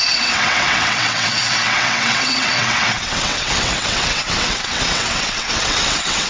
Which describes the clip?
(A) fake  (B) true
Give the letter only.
A